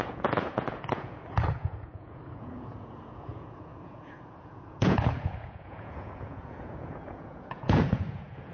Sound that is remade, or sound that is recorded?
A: remade